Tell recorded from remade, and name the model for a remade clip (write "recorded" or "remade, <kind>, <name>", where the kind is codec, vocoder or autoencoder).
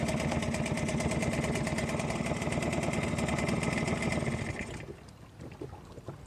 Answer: recorded